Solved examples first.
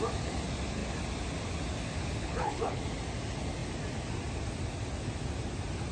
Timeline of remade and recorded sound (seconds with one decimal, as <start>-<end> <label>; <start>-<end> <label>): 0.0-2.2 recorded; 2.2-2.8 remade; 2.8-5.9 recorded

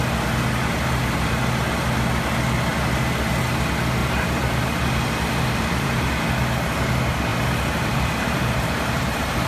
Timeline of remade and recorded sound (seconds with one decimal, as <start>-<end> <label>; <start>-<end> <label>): 0.0-4.0 recorded; 4.0-6.1 remade; 6.1-7.3 recorded; 7.3-9.5 remade

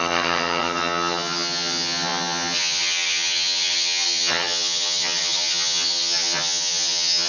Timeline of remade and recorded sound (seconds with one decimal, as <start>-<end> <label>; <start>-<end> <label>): 0.0-7.3 remade

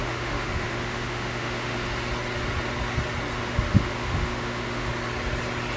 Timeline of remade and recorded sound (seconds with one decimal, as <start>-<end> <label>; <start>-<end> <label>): 0.0-1.9 remade; 1.9-3.4 recorded; 3.4-4.9 remade; 4.9-5.8 recorded